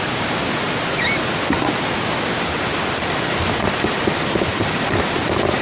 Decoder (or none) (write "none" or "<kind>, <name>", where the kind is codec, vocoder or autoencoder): none